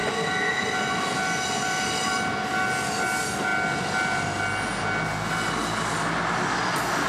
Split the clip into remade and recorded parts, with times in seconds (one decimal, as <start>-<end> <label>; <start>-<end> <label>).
0.0-7.1 recorded